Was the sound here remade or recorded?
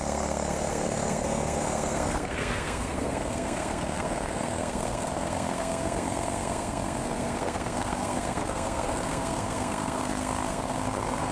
remade